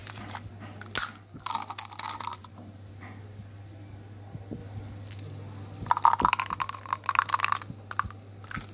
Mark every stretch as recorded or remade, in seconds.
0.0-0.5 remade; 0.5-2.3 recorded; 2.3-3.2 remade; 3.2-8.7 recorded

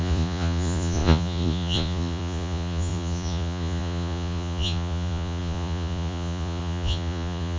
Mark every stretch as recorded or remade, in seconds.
0.0-7.6 remade

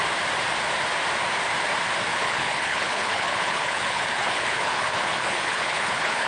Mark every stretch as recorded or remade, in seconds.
0.0-2.1 recorded; 2.1-6.3 remade

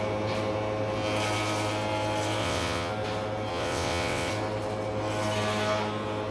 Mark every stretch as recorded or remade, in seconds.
0.0-2.4 recorded; 2.4-2.9 remade; 2.9-3.5 recorded; 3.5-4.3 remade; 4.3-6.3 recorded

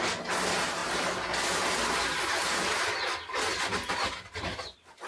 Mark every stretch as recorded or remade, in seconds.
0.0-5.1 recorded